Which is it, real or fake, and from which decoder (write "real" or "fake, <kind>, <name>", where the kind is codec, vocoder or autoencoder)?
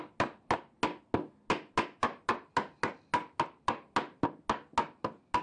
real